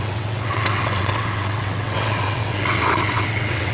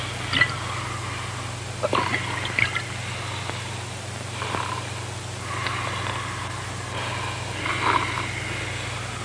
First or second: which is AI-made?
first